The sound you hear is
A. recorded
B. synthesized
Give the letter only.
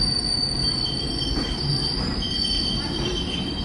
A